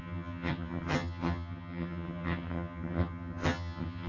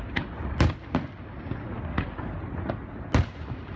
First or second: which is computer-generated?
first